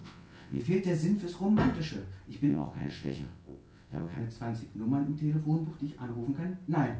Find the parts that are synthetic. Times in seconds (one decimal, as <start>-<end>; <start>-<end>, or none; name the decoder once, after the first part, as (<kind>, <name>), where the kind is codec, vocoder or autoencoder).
0.0-0.6 (vocoder, WaveNeXt); 2.5-4.2